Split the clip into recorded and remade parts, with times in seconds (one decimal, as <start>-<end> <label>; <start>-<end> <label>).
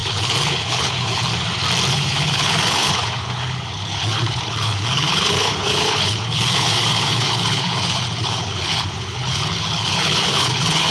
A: 0.0-1.3 remade; 1.3-1.9 recorded; 1.9-10.9 remade